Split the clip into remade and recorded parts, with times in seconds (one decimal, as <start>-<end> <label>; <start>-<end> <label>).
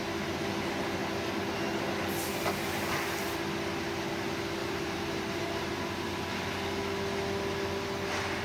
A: 0.0-4.6 recorded; 4.6-5.7 remade; 5.7-8.4 recorded